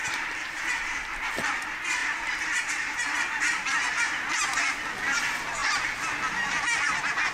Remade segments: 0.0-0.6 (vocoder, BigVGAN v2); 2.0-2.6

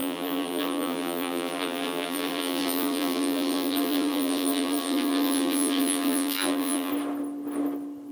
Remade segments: 0.0-6.9 (vocoder, BigVGAN v2)